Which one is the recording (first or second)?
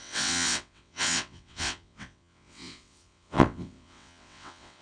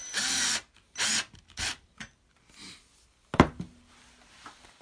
second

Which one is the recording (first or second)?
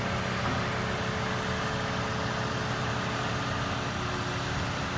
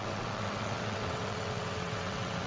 first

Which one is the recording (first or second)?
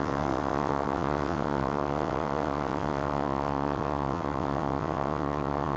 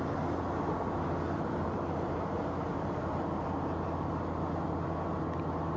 second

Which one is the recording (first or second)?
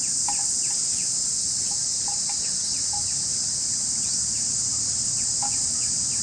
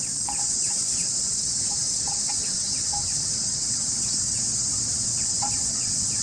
first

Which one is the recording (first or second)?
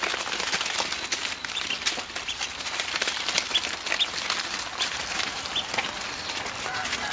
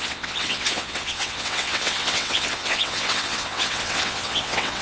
first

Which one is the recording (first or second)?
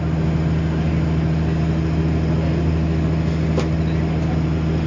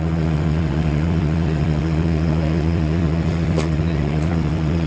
first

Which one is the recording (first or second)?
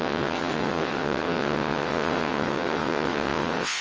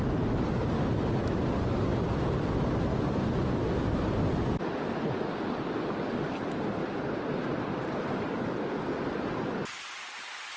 second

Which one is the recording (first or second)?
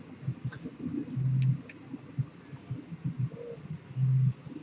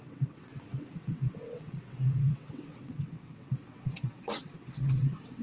first